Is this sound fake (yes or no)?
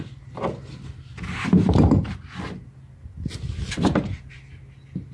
no